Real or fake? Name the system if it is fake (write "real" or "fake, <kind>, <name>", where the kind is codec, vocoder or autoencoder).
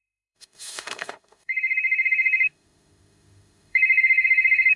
fake, autoencoder, DAC-VAE